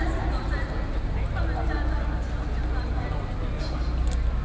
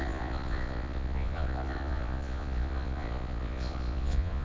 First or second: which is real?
first